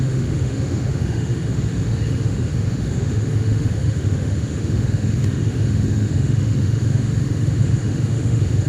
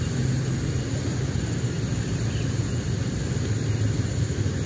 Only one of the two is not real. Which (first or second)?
first